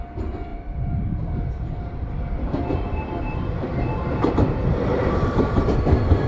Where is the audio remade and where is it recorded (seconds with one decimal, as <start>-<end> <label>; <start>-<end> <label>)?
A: 0.0-0.5 recorded; 0.5-4.3 remade; 4.3-4.9 recorded; 4.9-5.6 remade; 5.6-6.3 recorded